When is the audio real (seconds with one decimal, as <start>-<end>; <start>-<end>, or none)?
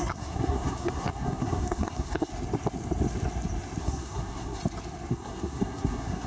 2.3-3.8; 4.6-5.1